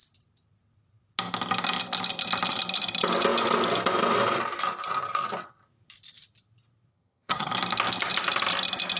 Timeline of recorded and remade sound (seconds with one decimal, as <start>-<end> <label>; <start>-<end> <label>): 0.0-6.9 recorded; 6.9-7.5 remade; 7.5-9.0 recorded